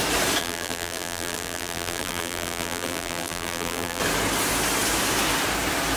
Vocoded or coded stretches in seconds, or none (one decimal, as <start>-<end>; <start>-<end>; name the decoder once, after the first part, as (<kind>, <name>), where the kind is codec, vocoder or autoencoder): 0.4-4.0 (vocoder, BigVGAN v2)